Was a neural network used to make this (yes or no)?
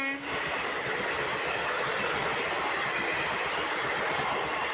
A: no